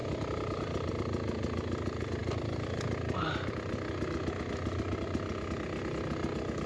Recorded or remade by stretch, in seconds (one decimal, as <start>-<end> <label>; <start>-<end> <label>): 0.0-6.7 recorded